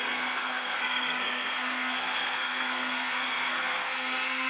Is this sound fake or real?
fake